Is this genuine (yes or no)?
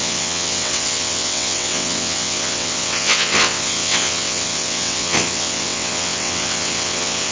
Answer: no